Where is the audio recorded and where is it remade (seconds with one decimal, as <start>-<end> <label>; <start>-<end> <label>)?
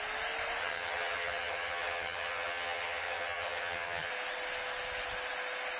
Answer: 0.0-0.6 recorded; 0.6-4.1 remade; 4.1-5.8 recorded